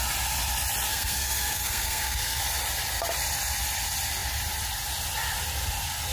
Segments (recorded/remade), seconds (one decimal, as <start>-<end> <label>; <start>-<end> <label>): 0.0-0.9 recorded; 0.9-2.4 remade; 2.4-6.1 recorded